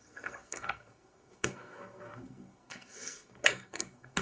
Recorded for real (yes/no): no